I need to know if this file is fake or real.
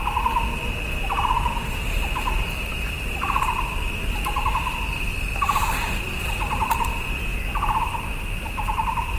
real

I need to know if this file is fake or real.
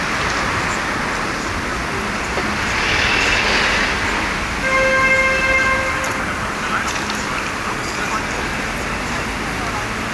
real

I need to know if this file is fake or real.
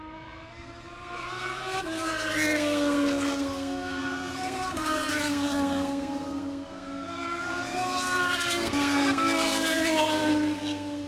fake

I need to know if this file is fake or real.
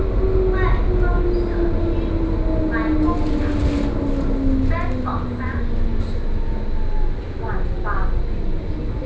real